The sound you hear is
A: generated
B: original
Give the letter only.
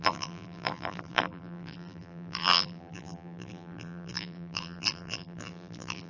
A